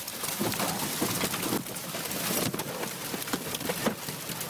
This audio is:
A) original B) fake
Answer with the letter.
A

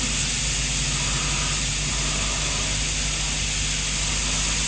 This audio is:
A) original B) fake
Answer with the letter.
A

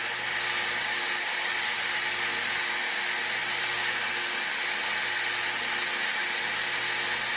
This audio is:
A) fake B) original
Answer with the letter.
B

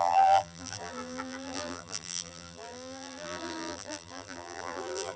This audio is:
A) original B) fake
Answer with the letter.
B